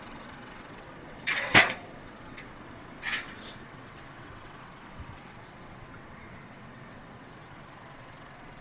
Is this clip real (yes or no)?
no